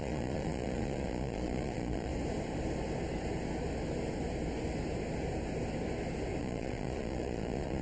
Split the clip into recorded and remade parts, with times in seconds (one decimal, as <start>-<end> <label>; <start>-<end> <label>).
0.0-2.1 remade; 2.1-6.4 recorded; 6.4-7.8 remade

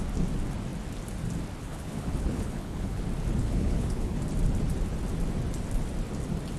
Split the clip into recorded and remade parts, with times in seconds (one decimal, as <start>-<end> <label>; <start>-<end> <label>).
0.0-1.6 recorded; 1.6-3.0 remade; 3.0-3.4 recorded; 3.4-4.2 remade; 4.2-6.6 recorded

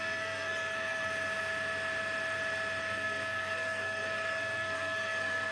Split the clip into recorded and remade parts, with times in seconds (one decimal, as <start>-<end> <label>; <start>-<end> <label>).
0.0-1.1 remade; 1.1-2.8 recorded; 2.8-5.5 remade

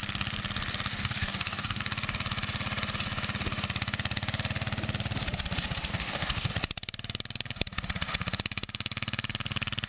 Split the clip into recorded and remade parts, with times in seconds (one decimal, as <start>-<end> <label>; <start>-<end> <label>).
0.0-0.9 recorded; 0.9-1.8 remade; 1.8-5.9 recorded; 5.9-6.5 remade; 6.5-9.9 recorded